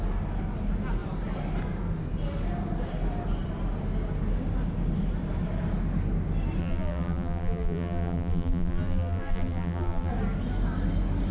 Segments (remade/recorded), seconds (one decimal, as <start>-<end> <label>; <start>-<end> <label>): 0.0-6.6 recorded; 6.6-10.1 remade; 10.1-11.3 recorded